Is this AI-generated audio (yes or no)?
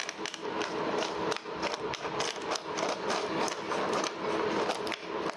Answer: no